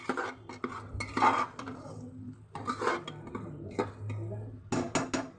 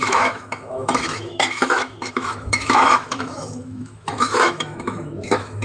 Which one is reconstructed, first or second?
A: second